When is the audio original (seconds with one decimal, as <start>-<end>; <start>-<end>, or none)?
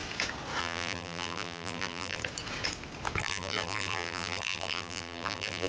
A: 0.0-0.6; 2.2-3.2